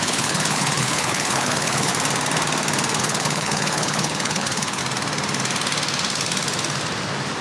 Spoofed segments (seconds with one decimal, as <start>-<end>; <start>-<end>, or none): 0.0-1.9; 3.0-4.8